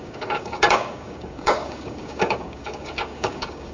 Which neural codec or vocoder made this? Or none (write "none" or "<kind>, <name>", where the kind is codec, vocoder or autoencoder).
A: codec, DAC